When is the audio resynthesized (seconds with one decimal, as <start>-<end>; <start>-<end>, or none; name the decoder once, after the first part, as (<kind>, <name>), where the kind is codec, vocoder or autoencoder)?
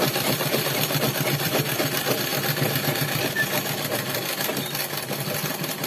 0.0-2.3 (vocoder, BigVGAN v2)